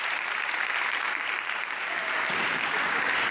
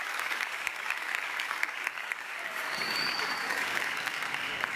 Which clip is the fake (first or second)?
second